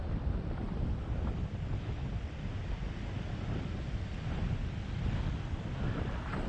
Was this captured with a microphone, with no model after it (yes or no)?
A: yes